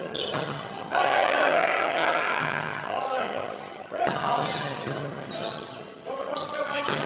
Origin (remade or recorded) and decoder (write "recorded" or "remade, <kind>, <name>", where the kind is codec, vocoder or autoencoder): remade, vocoder, HiFi-GAN